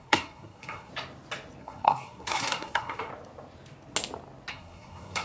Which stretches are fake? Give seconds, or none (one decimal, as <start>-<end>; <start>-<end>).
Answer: 0.0-0.9; 1.6-3.1; 4.5-5.2